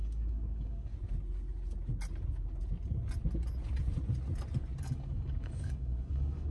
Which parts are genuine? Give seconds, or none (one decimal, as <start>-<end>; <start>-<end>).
0.9-4.8